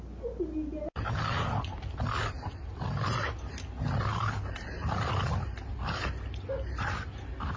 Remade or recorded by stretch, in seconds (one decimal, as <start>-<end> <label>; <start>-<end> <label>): 0.0-7.6 recorded